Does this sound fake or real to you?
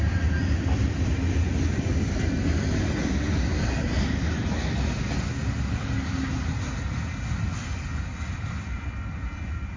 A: real